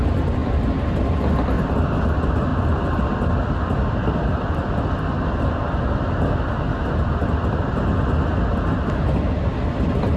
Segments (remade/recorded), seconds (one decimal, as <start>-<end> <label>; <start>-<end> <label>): 0.0-2.5 recorded; 2.5-3.2 remade; 3.2-10.2 recorded